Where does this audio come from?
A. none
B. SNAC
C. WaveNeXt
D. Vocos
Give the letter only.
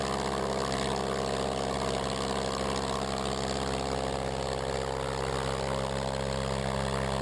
A